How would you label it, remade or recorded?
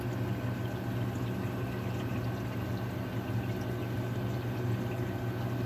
recorded